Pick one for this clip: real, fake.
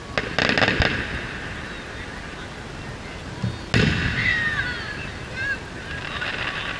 real